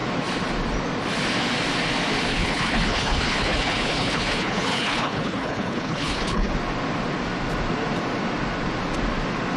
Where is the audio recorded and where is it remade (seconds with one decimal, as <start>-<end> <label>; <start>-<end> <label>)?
0.0-2.3 recorded; 2.3-6.5 remade; 6.5-9.6 recorded